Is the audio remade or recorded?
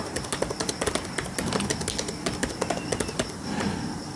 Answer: recorded